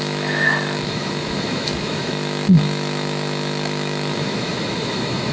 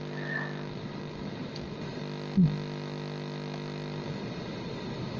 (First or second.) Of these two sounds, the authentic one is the second